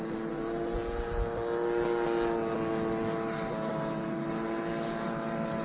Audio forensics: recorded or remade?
recorded